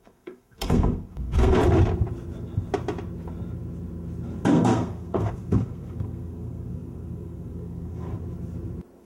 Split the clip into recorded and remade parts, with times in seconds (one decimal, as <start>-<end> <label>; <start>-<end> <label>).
0.0-1.6 remade; 1.6-4.5 recorded; 4.5-8.1 remade; 8.1-9.0 recorded